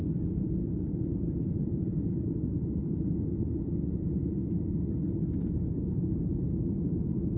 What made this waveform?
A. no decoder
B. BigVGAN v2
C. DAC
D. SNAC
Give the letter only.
A